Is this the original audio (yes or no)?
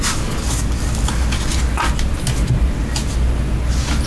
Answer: yes